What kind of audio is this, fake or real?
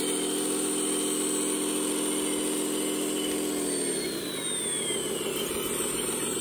real